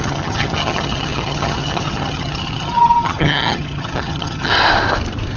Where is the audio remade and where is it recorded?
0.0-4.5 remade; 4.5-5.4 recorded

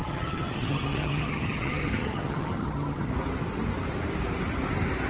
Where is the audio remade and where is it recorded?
0.0-3.1 remade; 3.1-5.1 recorded